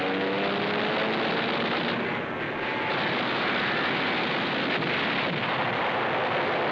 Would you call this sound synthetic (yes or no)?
no